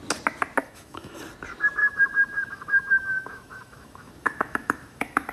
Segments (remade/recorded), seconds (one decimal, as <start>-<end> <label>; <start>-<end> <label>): 0.0-0.6 recorded; 0.6-1.2 remade; 1.2-1.8 recorded; 1.8-5.3 remade